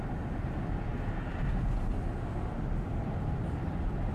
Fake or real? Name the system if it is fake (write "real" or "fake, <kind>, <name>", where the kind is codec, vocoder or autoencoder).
real